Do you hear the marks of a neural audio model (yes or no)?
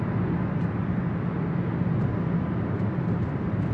no